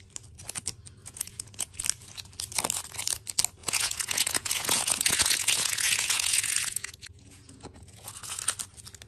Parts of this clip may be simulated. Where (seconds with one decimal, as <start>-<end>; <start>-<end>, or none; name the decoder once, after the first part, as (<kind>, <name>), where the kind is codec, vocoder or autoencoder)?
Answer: 1.0-1.8 (vocoder, Vocos); 3.6-8.4